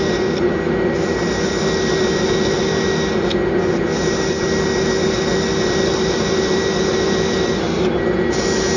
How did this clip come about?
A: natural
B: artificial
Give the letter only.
A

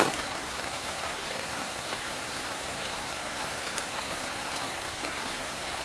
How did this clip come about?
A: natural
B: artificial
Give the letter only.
B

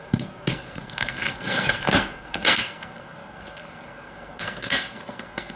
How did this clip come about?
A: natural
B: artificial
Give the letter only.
B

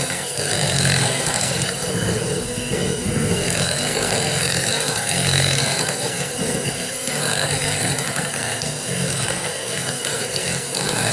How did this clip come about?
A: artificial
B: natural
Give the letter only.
A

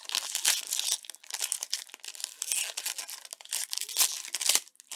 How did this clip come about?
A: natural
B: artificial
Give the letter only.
A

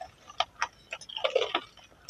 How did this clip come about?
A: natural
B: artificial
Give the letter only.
A